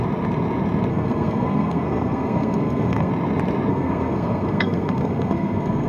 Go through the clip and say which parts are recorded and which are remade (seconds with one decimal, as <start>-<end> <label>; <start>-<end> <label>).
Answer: 0.0-0.9 recorded; 0.9-3.1 remade; 3.1-3.7 recorded; 3.7-5.9 remade